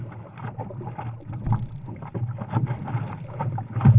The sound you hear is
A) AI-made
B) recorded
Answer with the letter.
B